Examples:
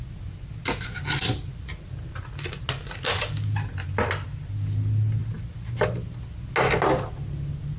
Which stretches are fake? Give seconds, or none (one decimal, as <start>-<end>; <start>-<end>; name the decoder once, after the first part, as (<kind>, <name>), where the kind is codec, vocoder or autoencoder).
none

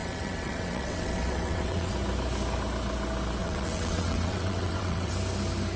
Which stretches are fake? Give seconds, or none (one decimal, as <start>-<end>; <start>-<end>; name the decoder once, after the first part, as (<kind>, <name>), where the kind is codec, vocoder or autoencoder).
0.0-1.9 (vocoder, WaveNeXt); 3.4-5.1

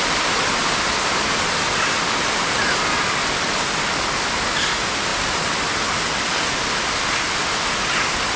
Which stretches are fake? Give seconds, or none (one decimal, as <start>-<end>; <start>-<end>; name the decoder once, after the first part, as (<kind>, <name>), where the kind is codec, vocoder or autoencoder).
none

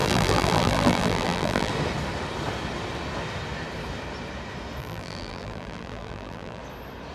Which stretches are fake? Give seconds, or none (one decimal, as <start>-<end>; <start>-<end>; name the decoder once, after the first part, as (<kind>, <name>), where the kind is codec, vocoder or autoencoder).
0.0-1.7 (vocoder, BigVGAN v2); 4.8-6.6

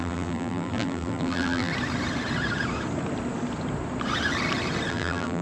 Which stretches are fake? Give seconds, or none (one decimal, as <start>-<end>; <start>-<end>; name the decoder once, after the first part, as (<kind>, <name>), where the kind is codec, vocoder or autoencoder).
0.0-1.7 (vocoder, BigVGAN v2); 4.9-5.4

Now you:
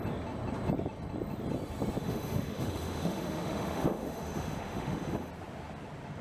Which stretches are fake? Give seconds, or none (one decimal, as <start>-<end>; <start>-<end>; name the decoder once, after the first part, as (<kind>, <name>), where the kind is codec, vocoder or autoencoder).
2.0-5.3 (autoencoder, DAC-VAE)

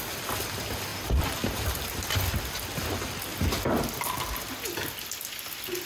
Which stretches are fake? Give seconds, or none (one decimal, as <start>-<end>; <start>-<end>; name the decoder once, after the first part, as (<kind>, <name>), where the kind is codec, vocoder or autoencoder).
0.9-2.6 (vocoder, BigVGAN v2); 3.3-4.1

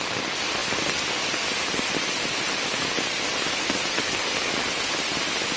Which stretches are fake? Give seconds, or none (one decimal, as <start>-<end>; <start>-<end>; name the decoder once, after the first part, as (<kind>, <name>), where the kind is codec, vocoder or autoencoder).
none